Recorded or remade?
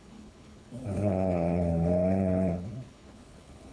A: remade